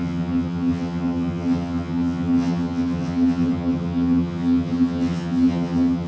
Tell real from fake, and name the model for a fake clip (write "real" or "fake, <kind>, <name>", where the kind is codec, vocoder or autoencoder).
fake, vocoder, HiFi-GAN